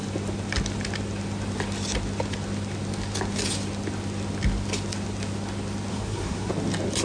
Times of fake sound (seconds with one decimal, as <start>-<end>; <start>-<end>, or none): 5.9-6.5